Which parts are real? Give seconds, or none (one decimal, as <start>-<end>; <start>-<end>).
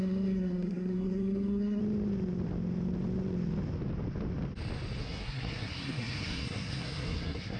1.8-5.0